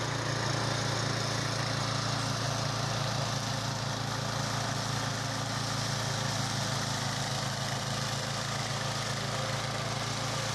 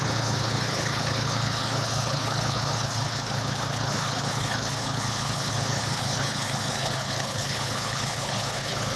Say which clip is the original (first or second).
first